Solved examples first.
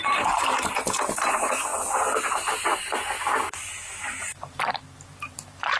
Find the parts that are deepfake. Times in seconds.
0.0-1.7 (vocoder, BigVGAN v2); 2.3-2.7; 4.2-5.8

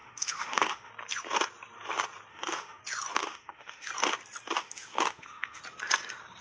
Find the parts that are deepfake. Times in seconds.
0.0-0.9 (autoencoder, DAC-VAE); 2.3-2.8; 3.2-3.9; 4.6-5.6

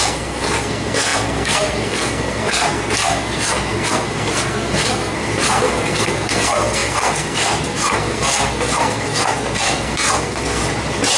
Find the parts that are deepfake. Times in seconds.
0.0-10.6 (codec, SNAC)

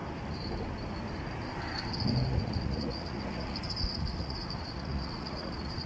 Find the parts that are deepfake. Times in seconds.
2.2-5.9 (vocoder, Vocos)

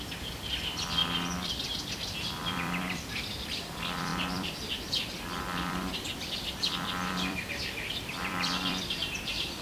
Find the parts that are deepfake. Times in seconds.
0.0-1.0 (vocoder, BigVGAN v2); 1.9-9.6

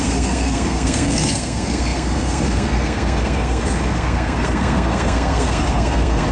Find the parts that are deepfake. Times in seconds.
0.0-6.3 (codec, SNAC)